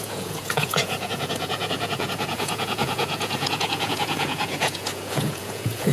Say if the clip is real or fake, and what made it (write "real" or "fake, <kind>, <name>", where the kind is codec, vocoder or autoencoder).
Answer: fake, vocoder, Vocos